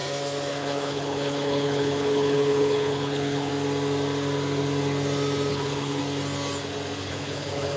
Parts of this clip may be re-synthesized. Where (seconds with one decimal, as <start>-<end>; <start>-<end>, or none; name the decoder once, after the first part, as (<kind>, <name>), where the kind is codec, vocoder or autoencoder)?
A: 0.5-3.5 (codec, HILCodec); 5.5-6.0; 7.1-7.8